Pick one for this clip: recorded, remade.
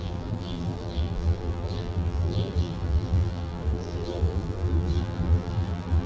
remade